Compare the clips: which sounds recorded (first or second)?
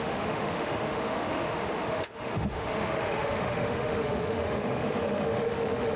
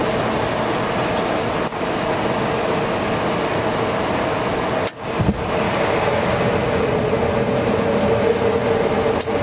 second